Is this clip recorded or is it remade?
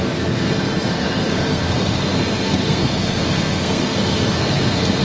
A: remade